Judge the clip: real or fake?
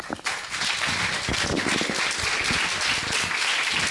real